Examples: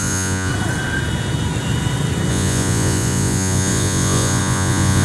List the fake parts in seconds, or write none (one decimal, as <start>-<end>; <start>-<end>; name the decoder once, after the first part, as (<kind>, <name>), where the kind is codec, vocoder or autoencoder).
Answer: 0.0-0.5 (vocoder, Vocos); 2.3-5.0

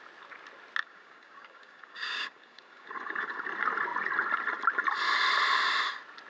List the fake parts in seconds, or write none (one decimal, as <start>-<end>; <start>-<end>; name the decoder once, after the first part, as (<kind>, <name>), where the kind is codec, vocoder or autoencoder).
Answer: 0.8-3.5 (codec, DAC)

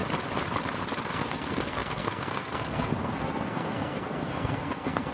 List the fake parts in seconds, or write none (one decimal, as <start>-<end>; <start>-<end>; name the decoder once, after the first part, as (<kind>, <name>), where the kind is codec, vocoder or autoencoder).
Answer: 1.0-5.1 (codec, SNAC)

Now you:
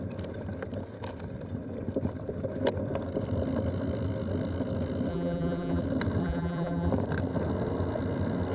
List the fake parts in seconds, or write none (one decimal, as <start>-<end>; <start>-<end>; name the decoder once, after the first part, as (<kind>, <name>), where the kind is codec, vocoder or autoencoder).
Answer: 5.1-5.8 (vocoder, BigVGAN v2); 6.2-6.9

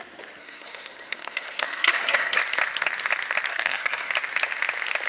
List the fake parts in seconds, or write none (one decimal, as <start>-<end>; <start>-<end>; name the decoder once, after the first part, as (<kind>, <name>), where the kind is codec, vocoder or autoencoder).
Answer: 0.4-2.4 (codec, SNAC); 3.5-4.1

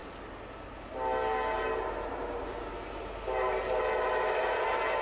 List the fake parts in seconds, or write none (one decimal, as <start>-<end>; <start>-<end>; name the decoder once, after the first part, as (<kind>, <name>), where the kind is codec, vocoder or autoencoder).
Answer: none

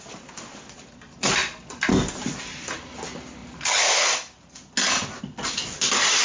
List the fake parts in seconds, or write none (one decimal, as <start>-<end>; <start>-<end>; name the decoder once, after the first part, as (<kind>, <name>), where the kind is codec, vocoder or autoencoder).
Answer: none

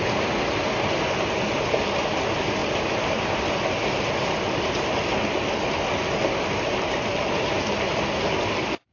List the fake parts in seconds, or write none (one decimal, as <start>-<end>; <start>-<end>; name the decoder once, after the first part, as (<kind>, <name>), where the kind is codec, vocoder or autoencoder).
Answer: 2.6-3.4 (vocoder, BigVGAN v2)